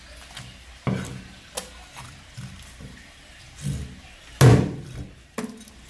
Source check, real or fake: real